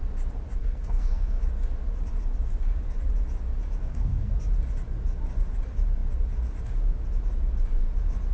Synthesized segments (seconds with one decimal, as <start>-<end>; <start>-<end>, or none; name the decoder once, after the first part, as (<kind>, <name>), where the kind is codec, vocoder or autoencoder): 0.6-1.4 (codec, SNAC); 3.8-4.3